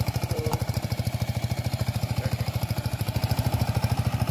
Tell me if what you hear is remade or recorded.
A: remade